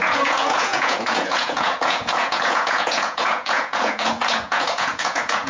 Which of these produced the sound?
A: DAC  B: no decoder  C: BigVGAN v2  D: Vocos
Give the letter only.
D